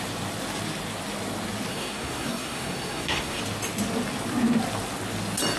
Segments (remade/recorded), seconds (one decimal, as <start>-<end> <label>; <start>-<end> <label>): 0.0-1.7 recorded; 1.7-3.4 remade; 3.4-5.6 recorded